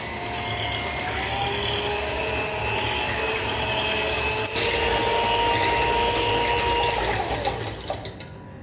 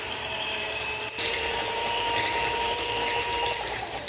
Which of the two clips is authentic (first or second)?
first